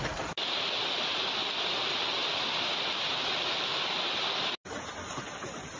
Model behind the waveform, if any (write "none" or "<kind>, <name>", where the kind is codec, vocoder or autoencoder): none